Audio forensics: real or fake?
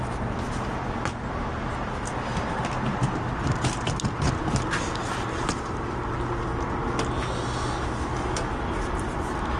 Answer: real